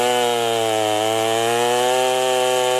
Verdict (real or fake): real